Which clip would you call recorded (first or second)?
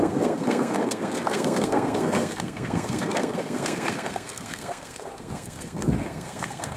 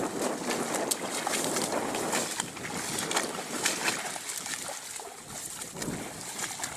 second